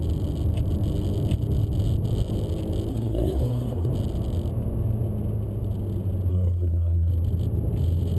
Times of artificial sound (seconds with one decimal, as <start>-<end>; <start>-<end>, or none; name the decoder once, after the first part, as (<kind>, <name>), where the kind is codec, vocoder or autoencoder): 2.9-3.9 (codec, SNAC); 6.3-7.1